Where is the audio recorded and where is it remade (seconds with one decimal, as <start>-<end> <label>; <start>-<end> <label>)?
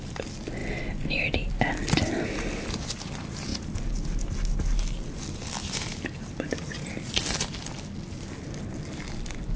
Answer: 0.0-9.6 recorded